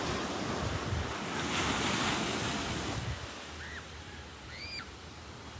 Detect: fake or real real